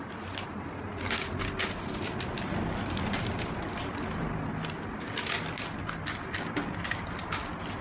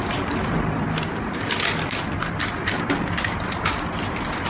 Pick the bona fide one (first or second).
first